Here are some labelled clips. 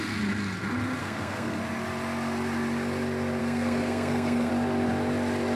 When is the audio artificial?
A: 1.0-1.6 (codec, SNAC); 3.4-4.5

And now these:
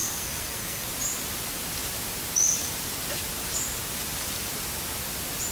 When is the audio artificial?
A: 0.0-0.9 (codec, SNAC)

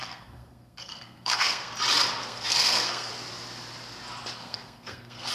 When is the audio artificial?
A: 0.0-1.7 (codec, SNAC); 2.2-3.1; 4.4-5.3